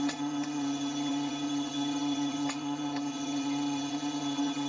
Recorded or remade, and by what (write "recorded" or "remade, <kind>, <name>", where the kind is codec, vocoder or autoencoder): remade, vocoder, HiFi-GAN